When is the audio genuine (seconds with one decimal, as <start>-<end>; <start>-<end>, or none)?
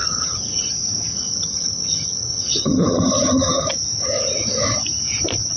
0.7-1.1; 3.7-5.6